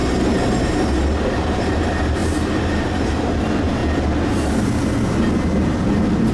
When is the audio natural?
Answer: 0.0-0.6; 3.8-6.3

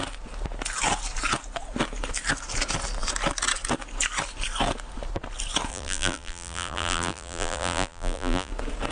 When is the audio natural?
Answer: 0.0-5.7; 8.5-8.9

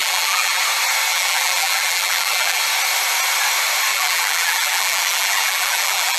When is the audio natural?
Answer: 0.6-1.1; 2.6-3.9

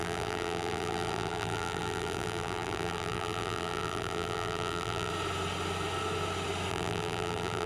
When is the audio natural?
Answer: 5.1-6.7

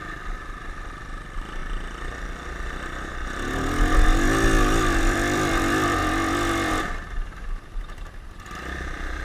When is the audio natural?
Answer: 1.6-4.8; 6.0-6.7